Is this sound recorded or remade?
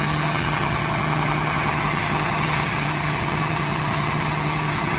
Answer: remade